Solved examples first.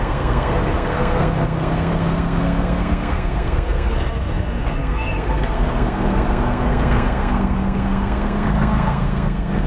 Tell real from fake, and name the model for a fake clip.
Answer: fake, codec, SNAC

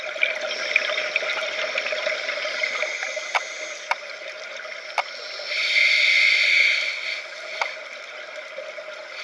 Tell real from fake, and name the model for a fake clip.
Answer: real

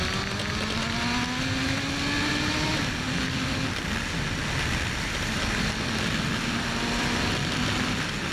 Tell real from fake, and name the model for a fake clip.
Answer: real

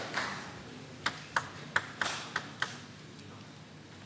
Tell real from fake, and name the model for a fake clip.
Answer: real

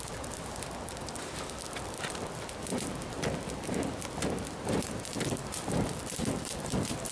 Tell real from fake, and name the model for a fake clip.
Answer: real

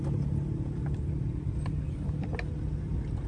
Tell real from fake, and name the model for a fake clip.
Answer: real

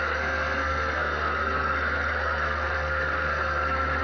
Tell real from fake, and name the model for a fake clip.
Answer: fake, codec, SNAC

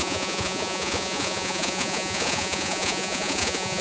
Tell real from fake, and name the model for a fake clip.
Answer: fake, vocoder, Vocos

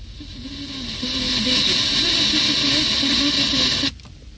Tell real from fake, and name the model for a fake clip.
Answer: real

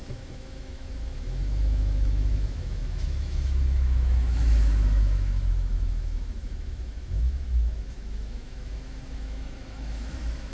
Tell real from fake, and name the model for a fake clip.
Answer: fake, autoencoder, DAC-VAE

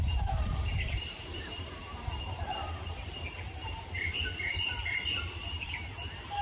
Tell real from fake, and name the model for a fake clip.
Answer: fake, vocoder, BigVGAN v2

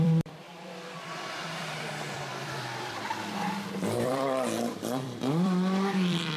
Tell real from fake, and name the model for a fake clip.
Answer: fake, vocoder, BigVGAN v2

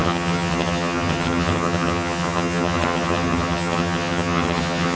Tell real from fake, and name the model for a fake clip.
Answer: fake, vocoder, HiFi-GAN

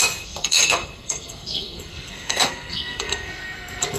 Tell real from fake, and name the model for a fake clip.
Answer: fake, codec, SNAC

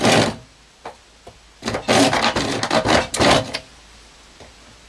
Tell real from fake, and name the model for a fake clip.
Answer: real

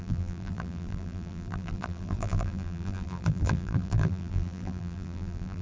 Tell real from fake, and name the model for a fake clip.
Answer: fake, vocoder, BigVGAN v2